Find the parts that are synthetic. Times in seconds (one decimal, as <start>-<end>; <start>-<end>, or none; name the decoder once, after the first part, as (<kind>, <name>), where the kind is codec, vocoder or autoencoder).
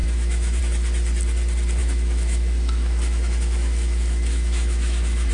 0.0-0.6 (autoencoder, DAC-VAE); 1.8-5.3